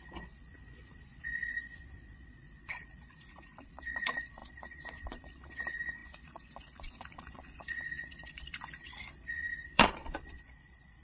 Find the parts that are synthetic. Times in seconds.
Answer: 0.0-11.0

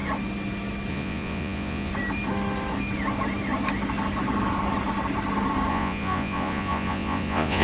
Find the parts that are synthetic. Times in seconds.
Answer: 0.9-1.9; 5.7-7.6

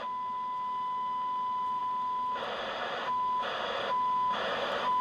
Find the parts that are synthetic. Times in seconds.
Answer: none

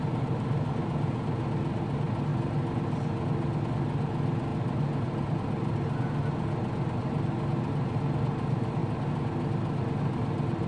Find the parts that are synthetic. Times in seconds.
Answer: 4.5-5.4

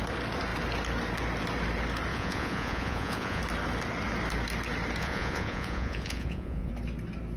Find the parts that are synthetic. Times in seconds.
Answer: 2.1-3.4; 5.0-6.7

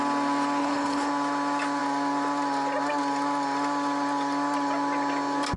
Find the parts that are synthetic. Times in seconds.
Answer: 0.6-1.1

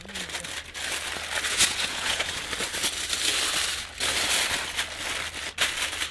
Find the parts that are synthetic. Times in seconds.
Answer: 1.5-2.4